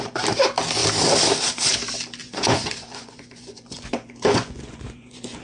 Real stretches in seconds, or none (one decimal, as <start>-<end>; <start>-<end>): 0.0-2.2